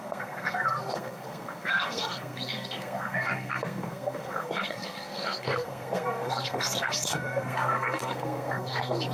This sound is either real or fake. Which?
fake